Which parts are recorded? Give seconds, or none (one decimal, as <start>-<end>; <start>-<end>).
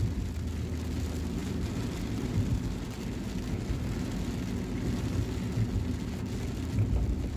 0.0-1.4; 3.0-7.4